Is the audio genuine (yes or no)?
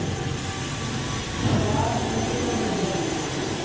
yes